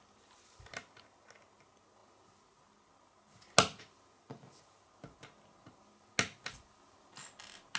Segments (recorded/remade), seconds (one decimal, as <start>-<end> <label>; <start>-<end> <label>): 0.0-7.8 recorded